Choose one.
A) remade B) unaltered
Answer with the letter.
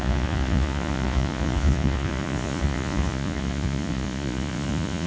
A